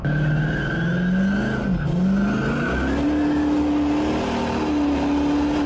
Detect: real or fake real